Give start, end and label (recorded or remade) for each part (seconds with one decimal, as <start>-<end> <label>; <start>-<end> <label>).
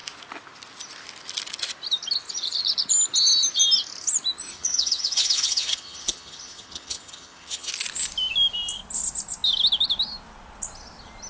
0.0-4.5 recorded; 4.5-7.7 remade; 7.7-11.3 recorded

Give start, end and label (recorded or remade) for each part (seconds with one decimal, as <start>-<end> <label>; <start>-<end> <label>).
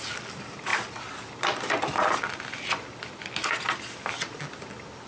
0.0-5.1 recorded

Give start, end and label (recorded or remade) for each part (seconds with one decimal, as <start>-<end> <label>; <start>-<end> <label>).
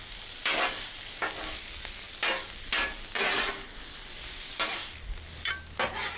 0.0-6.2 recorded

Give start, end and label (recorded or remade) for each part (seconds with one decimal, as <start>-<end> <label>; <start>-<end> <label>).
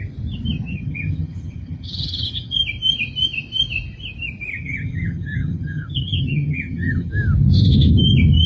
0.0-0.7 recorded; 0.7-2.6 remade; 2.6-4.5 recorded; 4.5-7.1 remade; 7.1-8.5 recorded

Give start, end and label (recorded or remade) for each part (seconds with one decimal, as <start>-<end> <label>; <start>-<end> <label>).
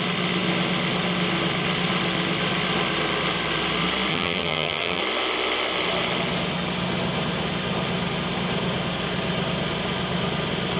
0.0-4.1 recorded; 4.1-5.0 remade; 5.0-10.8 recorded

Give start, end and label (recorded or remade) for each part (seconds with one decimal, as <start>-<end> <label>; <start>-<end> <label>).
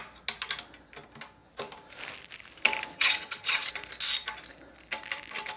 0.0-2.9 recorded; 2.9-3.7 remade; 3.7-5.6 recorded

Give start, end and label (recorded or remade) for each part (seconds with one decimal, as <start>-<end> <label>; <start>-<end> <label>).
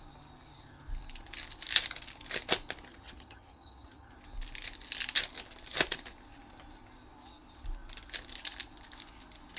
0.0-2.9 recorded; 2.9-4.1 remade; 4.1-9.6 recorded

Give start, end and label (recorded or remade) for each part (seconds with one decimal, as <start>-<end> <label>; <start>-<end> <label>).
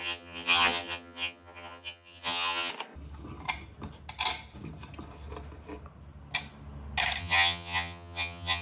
0.0-2.7 remade; 2.7-7.2 recorded; 7.2-8.6 remade